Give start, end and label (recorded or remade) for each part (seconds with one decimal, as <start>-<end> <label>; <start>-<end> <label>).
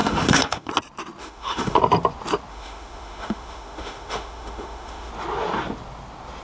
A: 0.0-0.7 remade; 0.7-1.2 recorded; 1.2-1.8 remade; 1.8-2.5 recorded; 2.5-5.1 remade; 5.1-6.4 recorded